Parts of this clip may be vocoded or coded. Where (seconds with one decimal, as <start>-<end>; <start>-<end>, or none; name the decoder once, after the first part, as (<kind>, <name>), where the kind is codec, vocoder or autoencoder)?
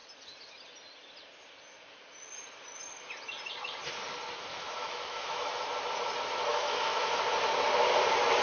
4.5-5.6 (autoencoder, DAC-VAE); 6.5-7.2